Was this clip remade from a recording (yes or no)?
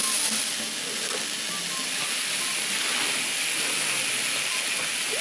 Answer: no